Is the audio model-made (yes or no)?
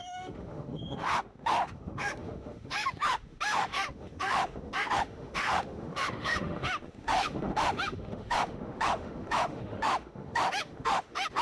yes